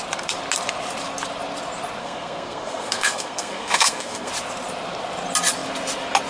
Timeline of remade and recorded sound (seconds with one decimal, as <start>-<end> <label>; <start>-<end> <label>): 0.0-2.0 recorded; 2.0-4.3 remade; 4.3-6.3 recorded